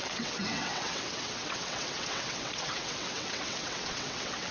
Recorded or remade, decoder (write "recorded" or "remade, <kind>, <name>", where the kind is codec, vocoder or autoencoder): remade, vocoder, WaveNeXt